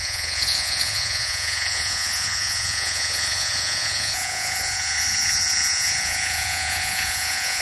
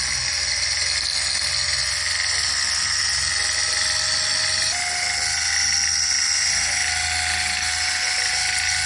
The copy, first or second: first